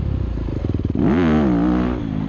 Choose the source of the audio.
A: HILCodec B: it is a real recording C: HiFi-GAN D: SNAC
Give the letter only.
B